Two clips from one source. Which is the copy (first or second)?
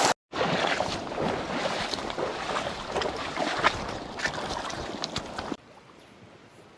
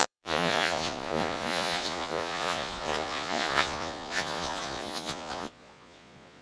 second